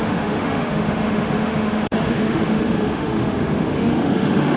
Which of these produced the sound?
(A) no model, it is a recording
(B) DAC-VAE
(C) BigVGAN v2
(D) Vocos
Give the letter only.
B